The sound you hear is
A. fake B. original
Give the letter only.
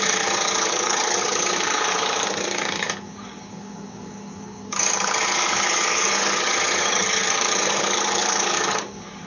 A